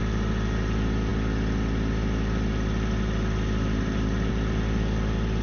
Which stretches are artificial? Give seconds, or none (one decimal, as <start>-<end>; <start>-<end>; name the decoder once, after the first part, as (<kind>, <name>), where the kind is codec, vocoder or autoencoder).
none